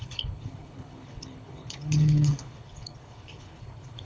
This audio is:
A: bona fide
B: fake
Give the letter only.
B